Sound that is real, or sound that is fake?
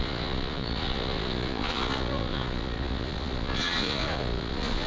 fake